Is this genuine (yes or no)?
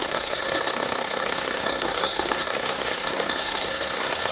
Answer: no